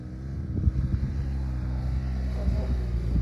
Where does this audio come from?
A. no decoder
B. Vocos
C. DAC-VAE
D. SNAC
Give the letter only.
A